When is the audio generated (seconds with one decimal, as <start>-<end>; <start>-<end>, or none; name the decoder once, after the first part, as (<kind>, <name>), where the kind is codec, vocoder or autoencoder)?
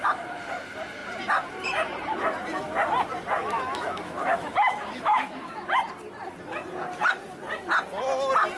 3.4-5.8 (autoencoder, DAC-VAE)